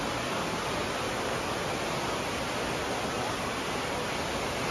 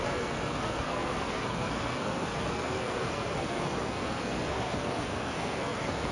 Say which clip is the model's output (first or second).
second